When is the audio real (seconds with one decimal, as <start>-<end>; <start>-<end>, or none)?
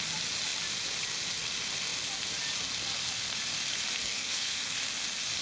0.0-4.0; 4.6-5.4